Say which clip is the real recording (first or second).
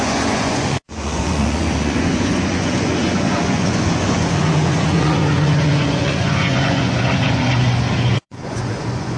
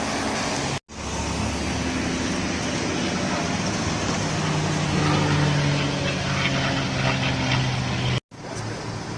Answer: second